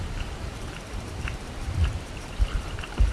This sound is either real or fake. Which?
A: fake